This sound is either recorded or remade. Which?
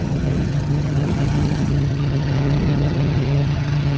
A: remade